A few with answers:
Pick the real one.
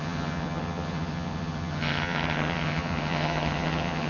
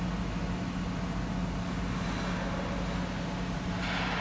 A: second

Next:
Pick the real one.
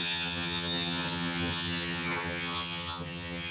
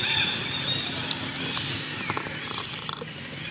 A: second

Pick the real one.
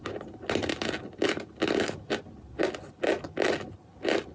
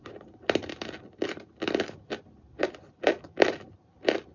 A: first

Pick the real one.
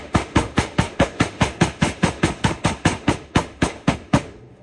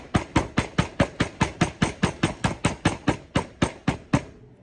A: second